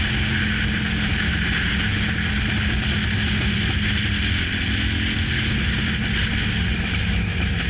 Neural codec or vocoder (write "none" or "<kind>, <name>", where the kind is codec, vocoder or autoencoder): none